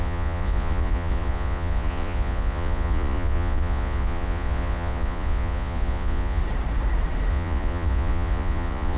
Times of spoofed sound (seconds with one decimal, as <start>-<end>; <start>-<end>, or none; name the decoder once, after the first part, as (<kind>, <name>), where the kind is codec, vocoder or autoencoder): 0.0-6.4 (vocoder, Vocos); 7.3-9.0